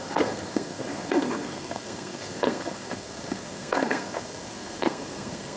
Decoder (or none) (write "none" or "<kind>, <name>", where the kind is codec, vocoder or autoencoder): codec, SNAC